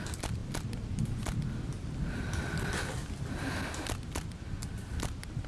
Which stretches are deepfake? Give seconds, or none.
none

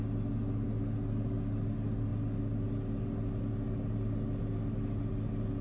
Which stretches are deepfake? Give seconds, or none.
none

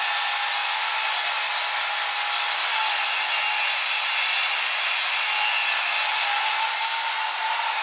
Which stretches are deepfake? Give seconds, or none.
none

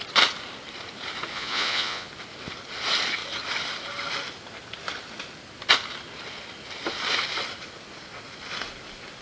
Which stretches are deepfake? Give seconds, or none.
1.3-2.1

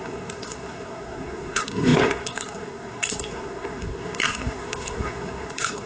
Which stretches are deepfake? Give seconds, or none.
0.0-5.9

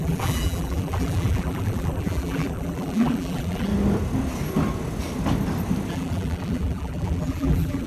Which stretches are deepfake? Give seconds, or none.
0.0-3.7; 5.9-7.9

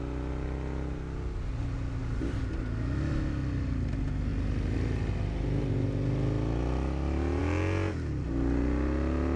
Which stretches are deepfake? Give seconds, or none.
none